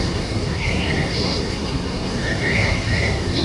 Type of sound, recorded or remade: remade